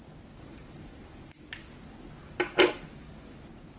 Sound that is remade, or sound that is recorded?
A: recorded